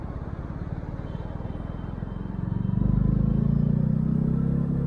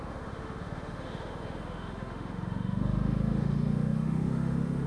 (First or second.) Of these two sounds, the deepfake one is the second